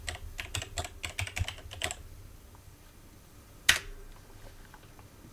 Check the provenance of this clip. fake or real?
real